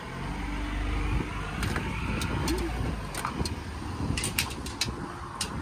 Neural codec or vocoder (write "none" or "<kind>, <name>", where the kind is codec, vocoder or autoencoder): none